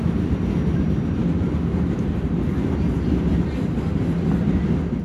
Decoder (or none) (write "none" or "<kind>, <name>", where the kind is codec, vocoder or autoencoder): none